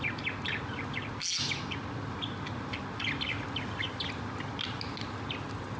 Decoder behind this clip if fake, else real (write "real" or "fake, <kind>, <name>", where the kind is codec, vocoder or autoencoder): real